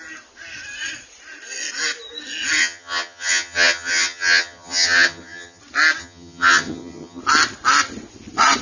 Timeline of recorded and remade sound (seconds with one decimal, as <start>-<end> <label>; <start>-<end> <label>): 0.0-2.6 recorded; 2.6-5.6 remade; 5.6-6.0 recorded; 6.0-7.2 remade; 7.2-8.6 recorded